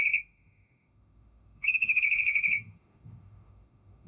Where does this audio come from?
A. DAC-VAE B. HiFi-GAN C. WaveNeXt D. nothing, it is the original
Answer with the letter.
A